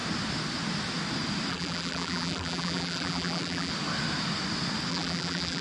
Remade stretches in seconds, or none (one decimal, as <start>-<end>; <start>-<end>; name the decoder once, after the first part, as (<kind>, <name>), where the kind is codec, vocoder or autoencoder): 1.5-3.7 (vocoder, BigVGAN v2); 4.9-5.6